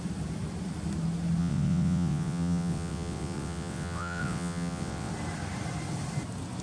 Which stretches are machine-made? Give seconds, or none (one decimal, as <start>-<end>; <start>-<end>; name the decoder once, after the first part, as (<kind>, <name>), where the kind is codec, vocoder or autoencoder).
1.4-5.1 (vocoder, WaveNeXt)